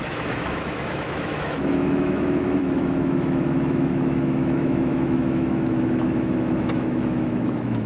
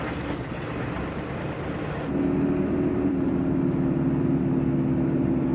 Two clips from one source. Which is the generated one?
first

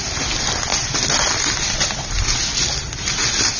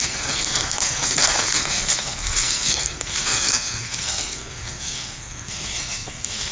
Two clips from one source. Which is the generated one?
second